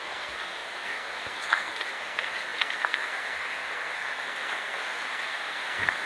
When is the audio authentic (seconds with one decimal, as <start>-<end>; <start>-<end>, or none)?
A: none